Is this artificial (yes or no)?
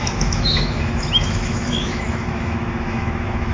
yes